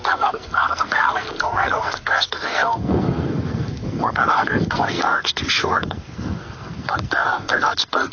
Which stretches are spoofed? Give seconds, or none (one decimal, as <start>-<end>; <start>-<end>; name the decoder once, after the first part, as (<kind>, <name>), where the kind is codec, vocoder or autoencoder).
0.0-8.1 (codec, SNAC)